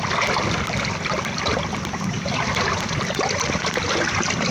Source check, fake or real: real